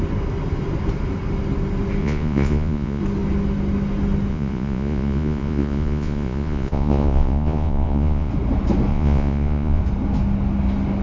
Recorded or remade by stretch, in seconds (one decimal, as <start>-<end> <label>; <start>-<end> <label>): 0.0-2.0 recorded; 2.0-3.0 remade; 3.0-4.3 recorded; 4.3-8.3 remade; 8.3-8.9 recorded; 8.9-9.8 remade; 9.8-11.0 recorded